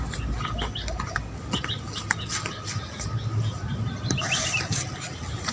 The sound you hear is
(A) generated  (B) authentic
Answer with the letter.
B